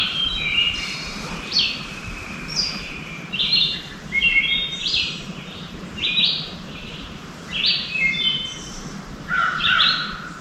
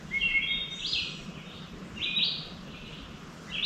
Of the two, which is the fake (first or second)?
first